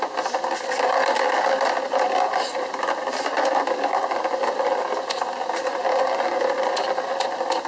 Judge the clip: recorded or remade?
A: recorded